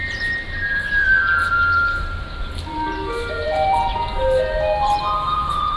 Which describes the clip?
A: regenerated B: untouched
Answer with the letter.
A